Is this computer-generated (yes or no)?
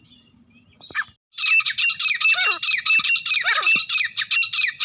no